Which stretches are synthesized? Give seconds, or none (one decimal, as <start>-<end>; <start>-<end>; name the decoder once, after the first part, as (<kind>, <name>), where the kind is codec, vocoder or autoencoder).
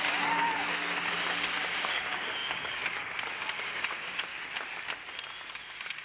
0.0-4.3 (codec, DAC); 5.5-6.0